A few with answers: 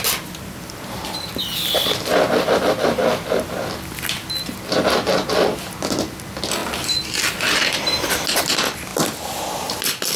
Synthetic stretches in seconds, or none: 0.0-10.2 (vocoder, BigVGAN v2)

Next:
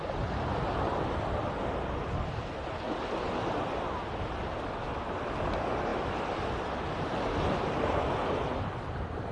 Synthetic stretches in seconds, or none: none